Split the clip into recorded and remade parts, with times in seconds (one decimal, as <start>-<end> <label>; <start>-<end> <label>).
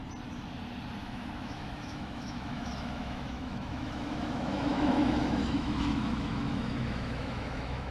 0.0-1.0 recorded; 1.0-7.9 remade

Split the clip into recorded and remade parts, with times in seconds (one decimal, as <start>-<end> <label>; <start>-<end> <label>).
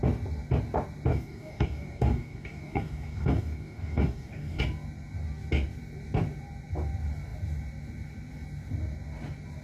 0.0-1.1 recorded; 1.1-4.6 remade; 4.6-9.6 recorded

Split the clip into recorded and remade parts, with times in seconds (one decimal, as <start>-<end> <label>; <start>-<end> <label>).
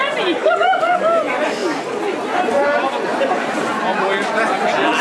0.0-0.4 recorded; 0.4-1.2 remade; 1.2-5.0 recorded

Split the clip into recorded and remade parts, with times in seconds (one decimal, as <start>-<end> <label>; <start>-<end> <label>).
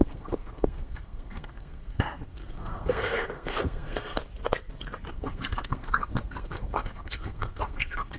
0.0-4.2 remade; 4.2-5.1 recorded; 5.1-8.2 remade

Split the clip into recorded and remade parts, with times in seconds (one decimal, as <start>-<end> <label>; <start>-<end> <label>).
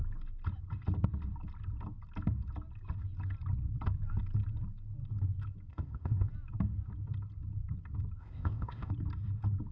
0.0-5.7 recorded; 5.7-6.3 remade; 6.3-8.2 recorded; 8.2-8.9 remade; 8.9-9.7 recorded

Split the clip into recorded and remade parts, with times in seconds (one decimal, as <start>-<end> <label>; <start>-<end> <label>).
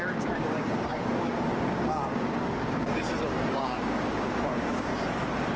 0.0-4.9 remade; 4.9-5.6 recorded